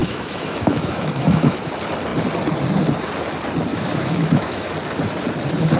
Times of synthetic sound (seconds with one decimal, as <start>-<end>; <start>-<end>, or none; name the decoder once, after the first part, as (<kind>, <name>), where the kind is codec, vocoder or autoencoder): 0.0-1.7 (autoencoder, DAC-VAE); 3.7-4.7